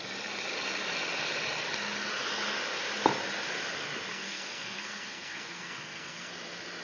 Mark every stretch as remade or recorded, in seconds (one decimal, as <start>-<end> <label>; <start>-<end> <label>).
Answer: 0.0-4.1 recorded; 4.1-6.3 remade; 6.3-6.8 recorded